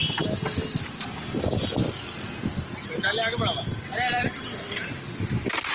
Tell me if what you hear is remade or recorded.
recorded